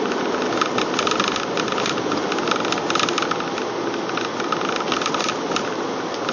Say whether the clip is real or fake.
real